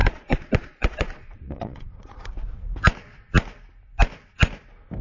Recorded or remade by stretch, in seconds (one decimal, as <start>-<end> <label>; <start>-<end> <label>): 0.0-2.3 remade; 2.3-5.0 recorded